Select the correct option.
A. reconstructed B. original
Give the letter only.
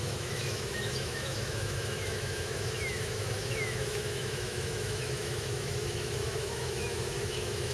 A